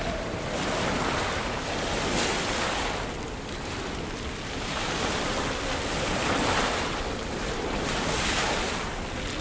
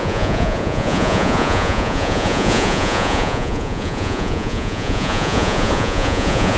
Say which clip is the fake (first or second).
second